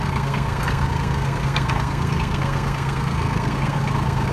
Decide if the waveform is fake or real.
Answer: fake